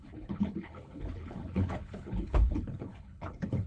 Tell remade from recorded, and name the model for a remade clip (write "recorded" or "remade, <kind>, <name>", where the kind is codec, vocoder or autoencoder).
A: remade, codec, HILCodec